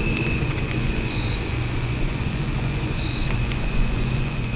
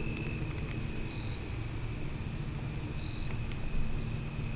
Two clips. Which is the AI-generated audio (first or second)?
first